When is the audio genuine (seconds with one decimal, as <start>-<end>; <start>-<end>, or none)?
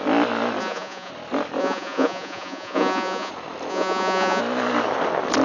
0.0-0.6; 1.1-1.6; 3.3-3.7; 4.4-5.4